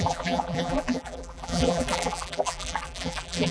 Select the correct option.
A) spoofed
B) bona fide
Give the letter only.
A